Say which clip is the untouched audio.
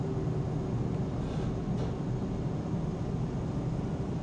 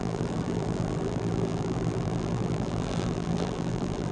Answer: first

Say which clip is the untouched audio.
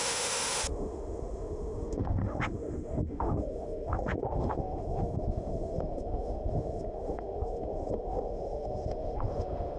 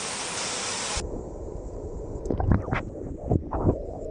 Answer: second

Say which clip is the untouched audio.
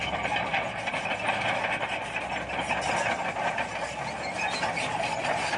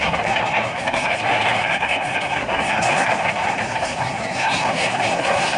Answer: first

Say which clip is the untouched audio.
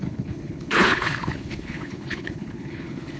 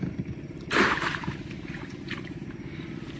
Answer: second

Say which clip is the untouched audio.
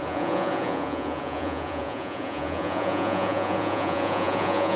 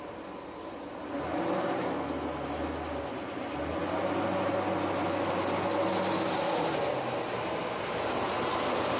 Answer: second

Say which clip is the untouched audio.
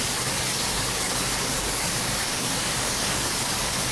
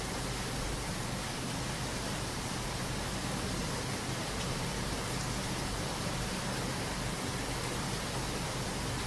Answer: second